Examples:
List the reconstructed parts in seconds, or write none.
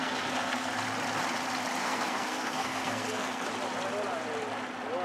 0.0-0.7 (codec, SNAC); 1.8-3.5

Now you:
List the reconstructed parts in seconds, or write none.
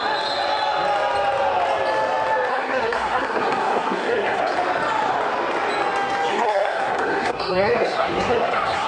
2.5-4.4 (codec, SNAC); 6.3-8.9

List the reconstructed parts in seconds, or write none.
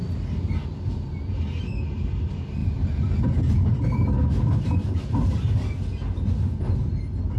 none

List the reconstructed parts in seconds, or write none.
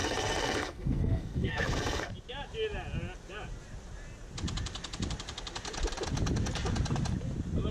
0.0-2.1 (codec, SNAC)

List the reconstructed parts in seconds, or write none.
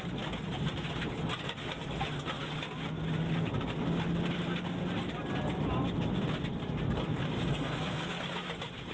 7.5-8.2 (codec, SNAC)